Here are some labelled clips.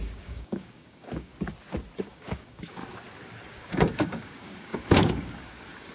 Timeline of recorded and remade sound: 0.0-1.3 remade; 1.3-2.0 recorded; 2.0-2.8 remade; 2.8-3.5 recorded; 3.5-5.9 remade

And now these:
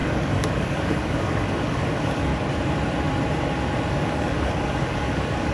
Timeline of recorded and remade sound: 0.0-2.3 remade; 2.3-3.9 recorded; 3.9-5.5 remade

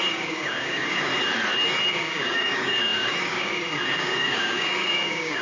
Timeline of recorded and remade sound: 0.0-1.1 remade; 1.1-1.9 recorded; 1.9-5.4 remade